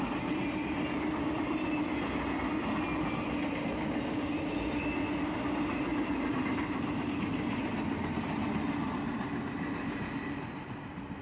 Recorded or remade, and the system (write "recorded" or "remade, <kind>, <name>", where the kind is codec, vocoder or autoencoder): recorded